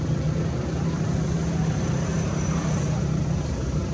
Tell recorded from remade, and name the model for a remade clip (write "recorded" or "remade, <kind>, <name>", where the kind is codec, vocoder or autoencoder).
remade, vocoder, BigVGAN v2